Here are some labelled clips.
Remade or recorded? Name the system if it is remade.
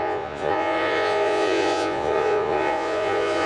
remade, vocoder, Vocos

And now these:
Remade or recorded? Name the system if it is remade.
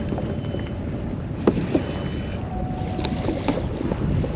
recorded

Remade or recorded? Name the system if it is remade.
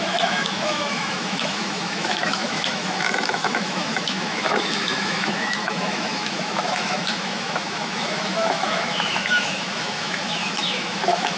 remade, autoencoder, DAC-VAE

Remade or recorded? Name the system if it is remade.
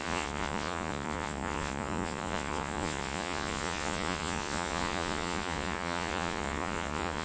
remade, vocoder, Vocos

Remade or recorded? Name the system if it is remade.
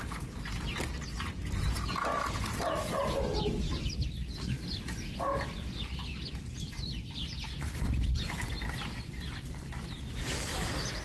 recorded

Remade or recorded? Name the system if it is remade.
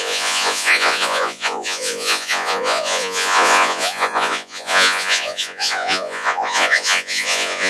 remade, vocoder, Vocos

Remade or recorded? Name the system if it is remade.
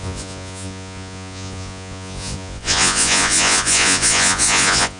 remade, vocoder, Vocos